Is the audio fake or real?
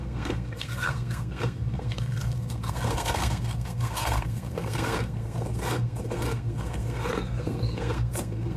fake